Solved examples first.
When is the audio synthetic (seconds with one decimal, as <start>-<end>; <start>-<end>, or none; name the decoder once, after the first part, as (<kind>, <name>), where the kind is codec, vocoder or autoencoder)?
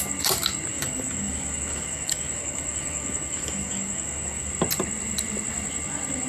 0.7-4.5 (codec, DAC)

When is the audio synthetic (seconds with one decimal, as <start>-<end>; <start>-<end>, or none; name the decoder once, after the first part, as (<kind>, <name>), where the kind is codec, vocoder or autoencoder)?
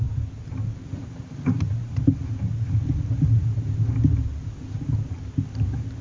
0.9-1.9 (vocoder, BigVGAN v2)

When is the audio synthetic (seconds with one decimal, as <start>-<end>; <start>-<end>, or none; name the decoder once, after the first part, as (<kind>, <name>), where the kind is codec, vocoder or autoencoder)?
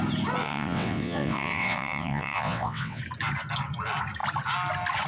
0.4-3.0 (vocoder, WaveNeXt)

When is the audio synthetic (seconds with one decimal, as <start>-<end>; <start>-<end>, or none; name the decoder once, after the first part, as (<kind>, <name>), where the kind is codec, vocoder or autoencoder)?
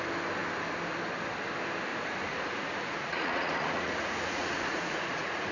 1.9-5.5 (vocoder, Vocos)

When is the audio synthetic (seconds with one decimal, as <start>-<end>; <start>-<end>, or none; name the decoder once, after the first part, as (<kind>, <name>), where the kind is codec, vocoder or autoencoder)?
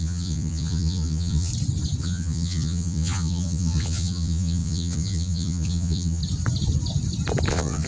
0.0-1.5 (vocoder, Vocos); 2.0-6.2; 7.5-7.9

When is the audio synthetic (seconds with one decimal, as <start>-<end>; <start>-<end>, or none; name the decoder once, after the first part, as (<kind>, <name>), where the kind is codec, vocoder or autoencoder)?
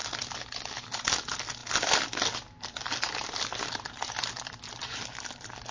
none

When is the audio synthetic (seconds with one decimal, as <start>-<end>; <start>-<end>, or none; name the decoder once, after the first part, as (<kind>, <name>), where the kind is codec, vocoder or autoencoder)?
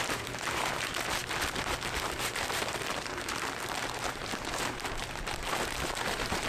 0.0-6.5 (vocoder, BigVGAN v2)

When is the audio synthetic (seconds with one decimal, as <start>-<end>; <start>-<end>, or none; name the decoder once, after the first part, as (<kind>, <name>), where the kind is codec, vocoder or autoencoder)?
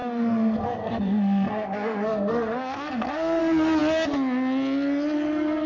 0.0-3.4 (codec, SNAC)